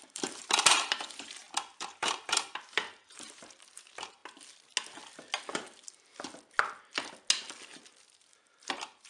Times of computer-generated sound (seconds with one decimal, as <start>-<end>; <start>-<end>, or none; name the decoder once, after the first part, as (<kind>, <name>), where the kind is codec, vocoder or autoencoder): 0.0-4.2 (vocoder, BigVGAN v2); 8.3-9.1

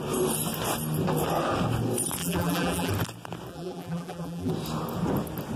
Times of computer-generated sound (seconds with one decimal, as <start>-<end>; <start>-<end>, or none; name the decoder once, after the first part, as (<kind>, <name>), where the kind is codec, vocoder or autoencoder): 2.2-2.9 (vocoder, BigVGAN v2); 3.5-4.5